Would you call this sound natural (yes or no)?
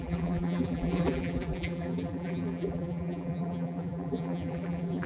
no